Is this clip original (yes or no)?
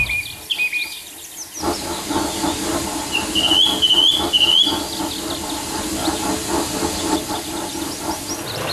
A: yes